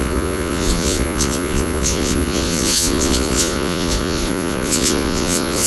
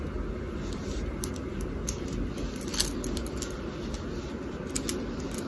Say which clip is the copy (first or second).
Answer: first